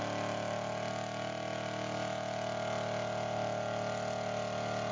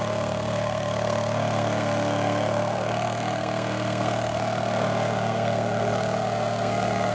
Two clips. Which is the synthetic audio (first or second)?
second